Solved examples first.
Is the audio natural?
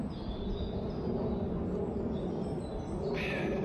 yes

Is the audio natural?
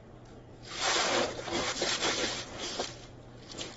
yes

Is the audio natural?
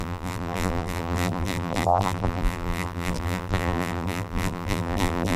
no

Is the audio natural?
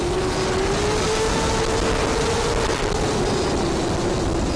yes